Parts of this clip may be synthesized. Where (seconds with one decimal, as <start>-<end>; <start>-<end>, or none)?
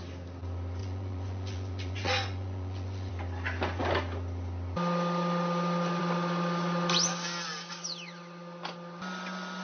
0.8-3.1